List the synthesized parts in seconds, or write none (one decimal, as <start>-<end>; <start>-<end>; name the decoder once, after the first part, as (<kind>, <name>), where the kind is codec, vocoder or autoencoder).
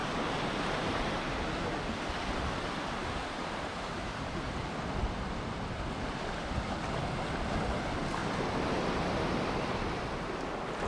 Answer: 0.0-1.3 (vocoder, BigVGAN v2); 3.0-4.6